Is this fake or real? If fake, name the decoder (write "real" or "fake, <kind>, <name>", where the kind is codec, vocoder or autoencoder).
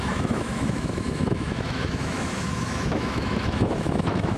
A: fake, autoencoder, DAC-VAE